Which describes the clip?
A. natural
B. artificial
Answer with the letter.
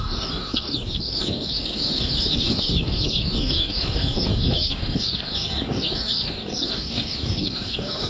B